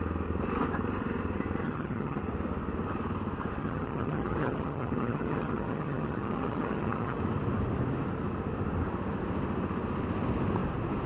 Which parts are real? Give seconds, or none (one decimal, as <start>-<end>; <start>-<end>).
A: 0.0-1.6; 2.2-3.6; 7.2-11.1